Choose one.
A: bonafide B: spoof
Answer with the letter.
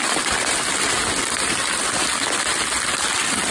A